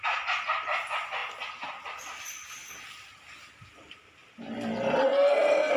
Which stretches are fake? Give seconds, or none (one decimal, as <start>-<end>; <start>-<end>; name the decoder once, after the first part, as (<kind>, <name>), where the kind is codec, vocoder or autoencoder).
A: none